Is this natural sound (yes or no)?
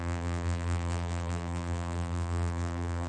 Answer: no